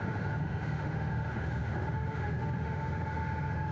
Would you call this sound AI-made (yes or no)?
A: yes